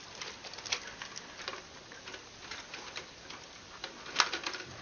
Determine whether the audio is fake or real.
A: real